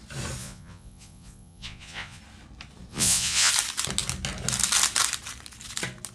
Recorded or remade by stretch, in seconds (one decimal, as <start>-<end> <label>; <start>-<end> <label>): 0.0-0.4 recorded; 0.4-2.2 remade; 2.2-2.9 recorded; 2.9-3.5 remade; 3.5-6.1 recorded